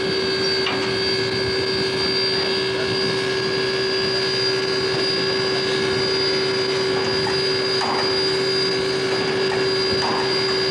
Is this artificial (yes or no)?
no